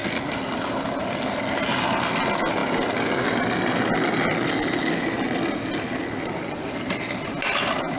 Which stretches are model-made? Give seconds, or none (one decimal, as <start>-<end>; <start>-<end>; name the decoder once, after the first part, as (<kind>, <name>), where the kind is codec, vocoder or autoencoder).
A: none